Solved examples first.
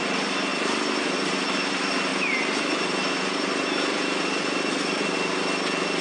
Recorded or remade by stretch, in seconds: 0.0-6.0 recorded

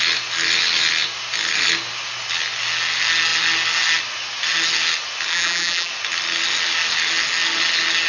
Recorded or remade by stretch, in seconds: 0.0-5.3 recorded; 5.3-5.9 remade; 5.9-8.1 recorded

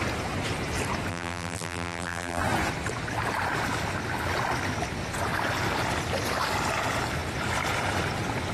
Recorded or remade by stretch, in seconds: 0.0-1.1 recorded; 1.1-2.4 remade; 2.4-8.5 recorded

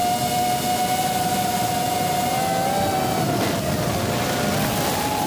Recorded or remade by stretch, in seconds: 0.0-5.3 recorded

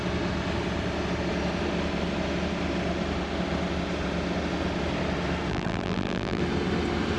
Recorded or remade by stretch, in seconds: 0.0-5.5 recorded; 5.5-6.4 remade; 6.4-7.2 recorded

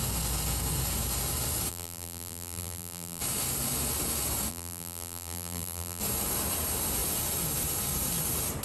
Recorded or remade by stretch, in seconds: 0.0-1.7 recorded; 1.7-3.2 remade; 3.2-4.5 recorded; 4.5-6.0 remade; 6.0-8.6 recorded

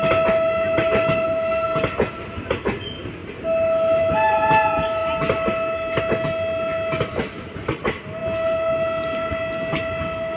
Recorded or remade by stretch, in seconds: 0.0-10.4 recorded